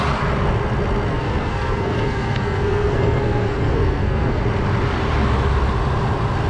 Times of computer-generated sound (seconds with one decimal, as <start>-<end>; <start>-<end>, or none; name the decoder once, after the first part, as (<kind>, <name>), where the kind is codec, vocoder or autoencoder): 1.1-4.4 (codec, SNAC)